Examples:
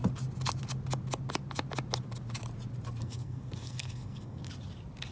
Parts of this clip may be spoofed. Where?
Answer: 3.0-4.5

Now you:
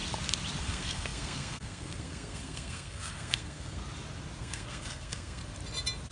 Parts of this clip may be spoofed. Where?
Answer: 0.6-3.8; 4.4-5.4